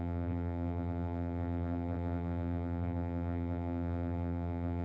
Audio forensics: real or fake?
fake